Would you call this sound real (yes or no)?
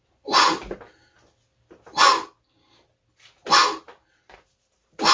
yes